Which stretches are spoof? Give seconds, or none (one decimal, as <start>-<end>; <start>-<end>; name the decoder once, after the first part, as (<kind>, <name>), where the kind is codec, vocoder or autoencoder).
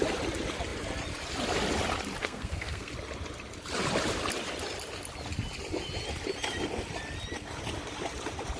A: 2.2-2.9 (codec, SNAC)